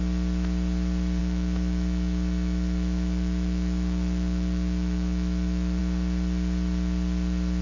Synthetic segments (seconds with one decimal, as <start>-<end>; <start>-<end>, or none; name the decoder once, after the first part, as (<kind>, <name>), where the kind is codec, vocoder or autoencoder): 1.2-5.8 (autoencoder, DAC-VAE)